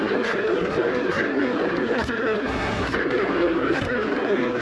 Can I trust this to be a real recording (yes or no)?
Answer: no